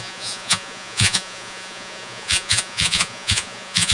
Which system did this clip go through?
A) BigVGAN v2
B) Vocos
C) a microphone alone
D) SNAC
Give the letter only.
B